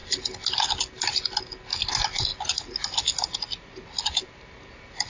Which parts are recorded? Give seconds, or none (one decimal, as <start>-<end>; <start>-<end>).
0.0-5.1